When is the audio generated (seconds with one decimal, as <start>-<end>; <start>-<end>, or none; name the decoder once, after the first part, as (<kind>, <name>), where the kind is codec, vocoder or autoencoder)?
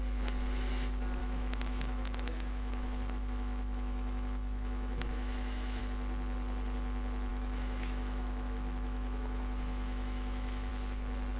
1.2-5.8 (autoencoder, DAC-VAE); 7.3-10.7